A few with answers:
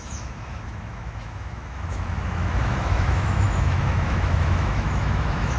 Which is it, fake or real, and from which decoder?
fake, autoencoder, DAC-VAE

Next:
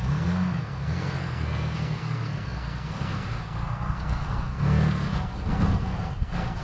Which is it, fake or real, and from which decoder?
fake, codec, SNAC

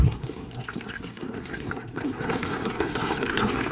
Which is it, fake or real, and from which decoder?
fake, codec, SNAC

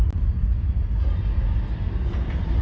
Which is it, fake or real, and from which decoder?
real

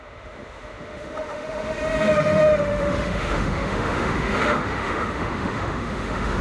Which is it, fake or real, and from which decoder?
fake, autoencoder, DAC-VAE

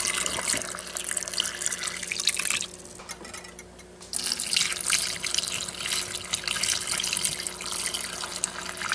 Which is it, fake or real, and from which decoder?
real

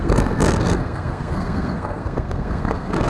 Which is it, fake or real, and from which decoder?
fake, codec, SNAC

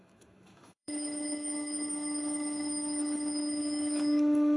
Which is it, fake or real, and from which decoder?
fake, autoencoder, DAC-VAE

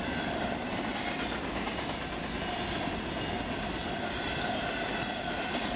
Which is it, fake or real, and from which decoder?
real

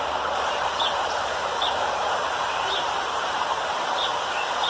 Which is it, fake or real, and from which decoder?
fake, vocoder, BigVGAN v2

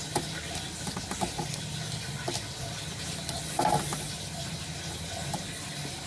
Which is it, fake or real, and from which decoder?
real